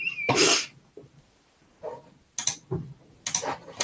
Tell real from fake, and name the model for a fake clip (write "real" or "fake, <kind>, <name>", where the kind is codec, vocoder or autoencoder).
real